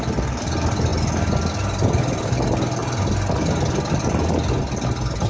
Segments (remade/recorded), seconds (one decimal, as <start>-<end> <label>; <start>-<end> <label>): 0.0-5.3 recorded